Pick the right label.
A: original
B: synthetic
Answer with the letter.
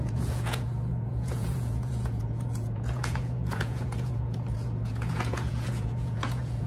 B